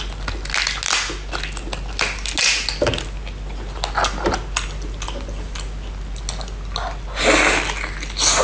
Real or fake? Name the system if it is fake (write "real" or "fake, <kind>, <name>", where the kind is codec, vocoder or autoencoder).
real